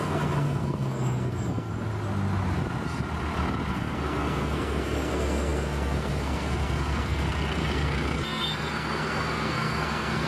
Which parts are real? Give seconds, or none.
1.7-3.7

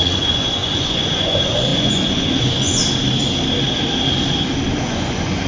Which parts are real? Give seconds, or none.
2.8-4.8

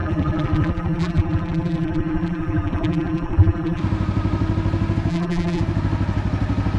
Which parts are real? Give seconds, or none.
3.8-5.1; 5.6-6.8

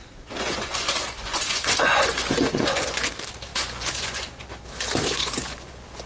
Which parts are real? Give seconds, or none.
3.1-3.5; 4.5-5.0